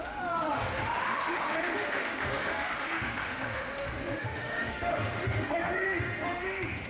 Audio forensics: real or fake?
fake